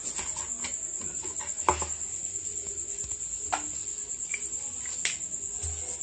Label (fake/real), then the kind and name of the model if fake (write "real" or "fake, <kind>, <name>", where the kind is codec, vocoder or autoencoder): real